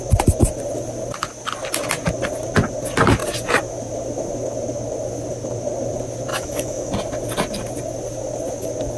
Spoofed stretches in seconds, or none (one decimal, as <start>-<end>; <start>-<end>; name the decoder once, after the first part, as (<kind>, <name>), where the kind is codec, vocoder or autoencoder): 6.3-6.9 (autoencoder, DAC-VAE)